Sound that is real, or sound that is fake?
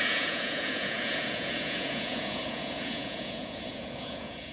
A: fake